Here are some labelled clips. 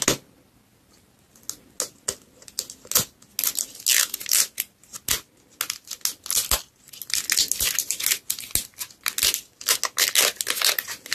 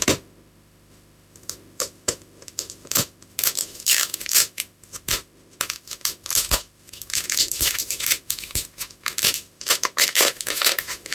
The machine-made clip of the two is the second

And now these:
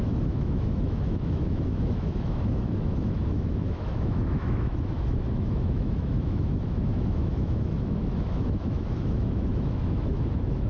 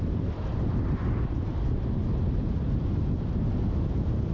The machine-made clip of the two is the first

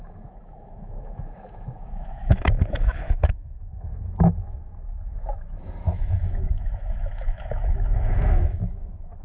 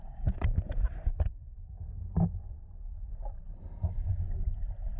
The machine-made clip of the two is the first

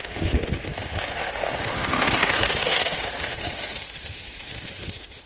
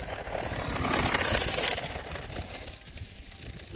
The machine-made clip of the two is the first